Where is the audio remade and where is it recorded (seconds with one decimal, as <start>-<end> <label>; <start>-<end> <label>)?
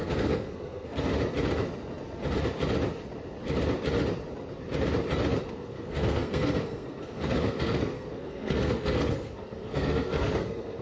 0.0-1.1 remade; 1.1-5.5 recorded; 5.5-10.8 remade